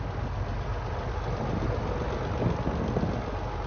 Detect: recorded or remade recorded